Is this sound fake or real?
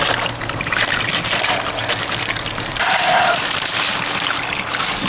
real